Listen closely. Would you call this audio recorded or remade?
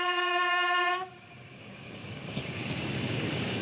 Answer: remade